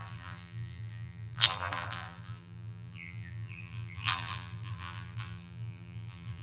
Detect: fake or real fake